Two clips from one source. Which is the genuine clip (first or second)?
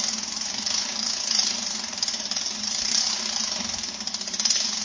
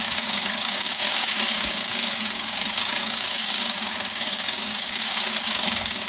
first